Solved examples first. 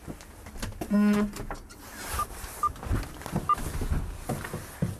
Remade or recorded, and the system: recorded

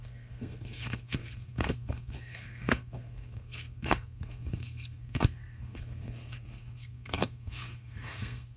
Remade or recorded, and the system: remade, codec, SNAC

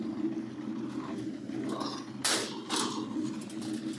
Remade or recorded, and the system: recorded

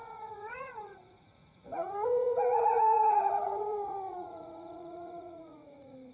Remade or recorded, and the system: remade, vocoder, Vocos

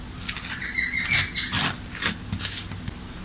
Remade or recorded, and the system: recorded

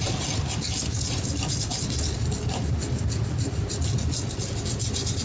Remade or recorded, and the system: recorded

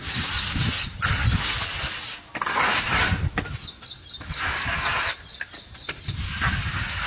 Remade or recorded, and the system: recorded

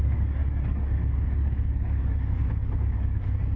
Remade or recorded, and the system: remade, codec, DAC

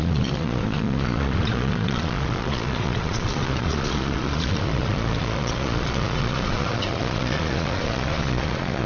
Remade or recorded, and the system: remade, vocoder, Vocos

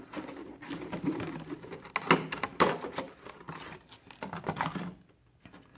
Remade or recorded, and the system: recorded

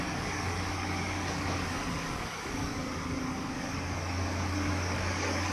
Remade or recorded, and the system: remade, codec, DAC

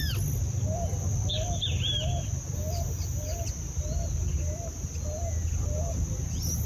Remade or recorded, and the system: recorded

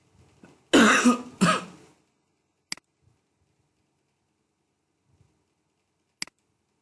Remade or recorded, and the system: recorded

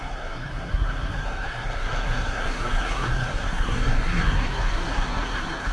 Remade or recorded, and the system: remade, codec, SNAC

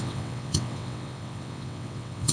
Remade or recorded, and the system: remade, vocoder, WaveNeXt